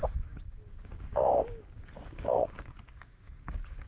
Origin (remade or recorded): remade